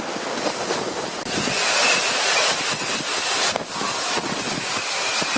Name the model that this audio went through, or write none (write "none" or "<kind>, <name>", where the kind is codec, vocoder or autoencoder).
none